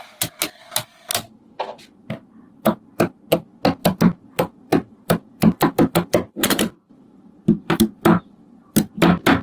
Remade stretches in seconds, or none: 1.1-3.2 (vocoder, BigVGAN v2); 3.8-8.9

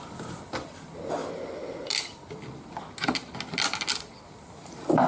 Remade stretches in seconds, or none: 0.0-1.2 (vocoder, BigVGAN v2); 4.3-5.1